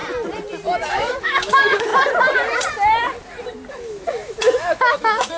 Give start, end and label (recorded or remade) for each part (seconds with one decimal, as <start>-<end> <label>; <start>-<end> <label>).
0.0-0.9 recorded; 0.9-1.9 remade; 1.9-3.7 recorded; 3.7-5.4 remade